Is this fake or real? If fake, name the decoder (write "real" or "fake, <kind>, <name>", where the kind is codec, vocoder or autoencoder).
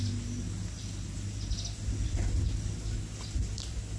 real